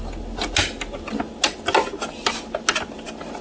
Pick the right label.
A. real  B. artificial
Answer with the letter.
A